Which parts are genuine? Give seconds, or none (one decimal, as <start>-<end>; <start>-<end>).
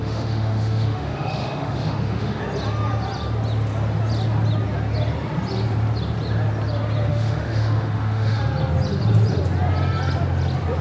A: 2.4-7.1; 8.4-10.8